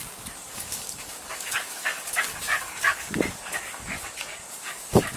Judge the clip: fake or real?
fake